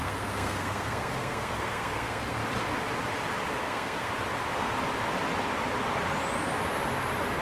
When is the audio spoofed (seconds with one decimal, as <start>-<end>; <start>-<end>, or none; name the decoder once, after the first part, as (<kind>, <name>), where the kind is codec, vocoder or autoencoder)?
0.0-2.4 (codec, SNAC); 3.6-4.1